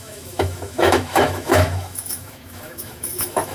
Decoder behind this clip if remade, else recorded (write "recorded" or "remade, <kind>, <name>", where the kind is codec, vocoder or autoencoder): remade, autoencoder, DAC-VAE